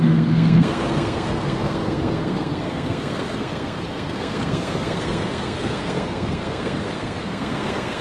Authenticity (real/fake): fake